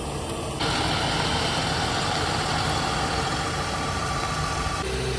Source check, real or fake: real